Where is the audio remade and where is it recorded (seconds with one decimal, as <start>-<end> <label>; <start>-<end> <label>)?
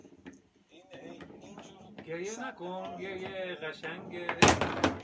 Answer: 0.0-5.0 recorded